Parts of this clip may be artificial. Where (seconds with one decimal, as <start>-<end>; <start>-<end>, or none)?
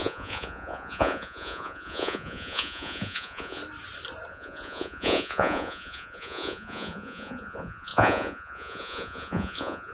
0.0-3.6; 4.3-9.9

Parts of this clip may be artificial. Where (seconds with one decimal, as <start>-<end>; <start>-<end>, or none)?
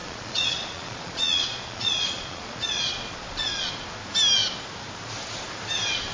0.0-3.7